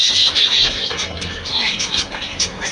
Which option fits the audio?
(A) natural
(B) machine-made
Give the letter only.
B